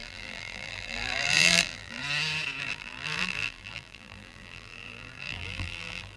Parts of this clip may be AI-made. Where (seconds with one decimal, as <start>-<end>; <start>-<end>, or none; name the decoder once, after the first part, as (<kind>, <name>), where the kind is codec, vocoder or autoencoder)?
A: 0.0-2.0 (vocoder, BigVGAN v2); 2.6-6.2